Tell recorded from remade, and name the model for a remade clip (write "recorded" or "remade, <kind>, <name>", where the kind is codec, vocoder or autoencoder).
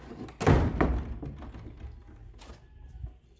recorded